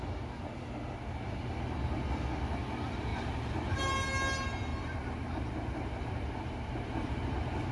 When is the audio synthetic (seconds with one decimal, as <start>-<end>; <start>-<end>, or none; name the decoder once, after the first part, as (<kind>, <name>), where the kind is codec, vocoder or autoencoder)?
3.1-3.8 (vocoder, BigVGAN v2); 4.7-7.7